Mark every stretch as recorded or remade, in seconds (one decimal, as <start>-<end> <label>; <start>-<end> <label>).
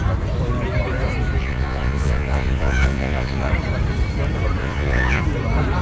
0.0-1.4 recorded; 1.4-3.5 remade; 3.5-4.6 recorded; 4.6-5.2 remade; 5.2-5.8 recorded